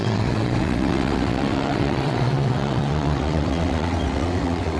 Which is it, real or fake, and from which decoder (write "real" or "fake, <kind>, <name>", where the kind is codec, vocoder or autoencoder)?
fake, vocoder, WaveNeXt